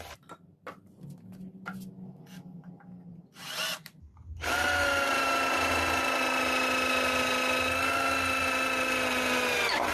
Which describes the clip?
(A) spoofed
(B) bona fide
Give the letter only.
B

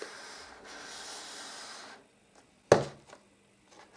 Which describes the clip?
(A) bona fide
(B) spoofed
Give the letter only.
A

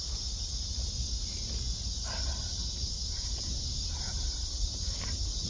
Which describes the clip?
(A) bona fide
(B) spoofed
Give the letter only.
B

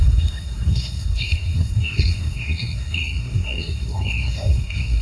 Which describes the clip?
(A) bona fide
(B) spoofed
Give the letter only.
B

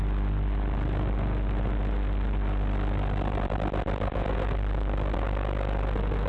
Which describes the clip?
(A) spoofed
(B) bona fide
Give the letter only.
B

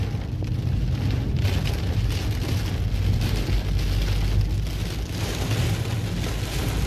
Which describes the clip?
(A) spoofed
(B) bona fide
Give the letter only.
B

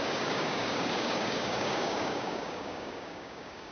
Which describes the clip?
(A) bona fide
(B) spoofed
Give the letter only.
B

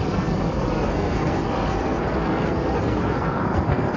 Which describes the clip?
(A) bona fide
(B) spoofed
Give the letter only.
B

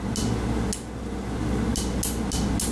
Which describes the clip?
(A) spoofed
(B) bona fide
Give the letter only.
B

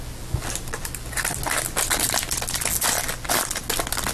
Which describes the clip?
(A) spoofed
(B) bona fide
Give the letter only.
B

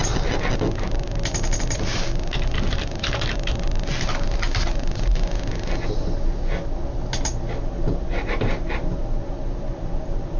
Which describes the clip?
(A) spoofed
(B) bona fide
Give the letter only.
B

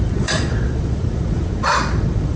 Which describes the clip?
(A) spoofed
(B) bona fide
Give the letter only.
A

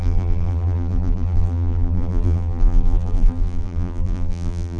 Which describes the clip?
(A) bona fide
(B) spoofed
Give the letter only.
B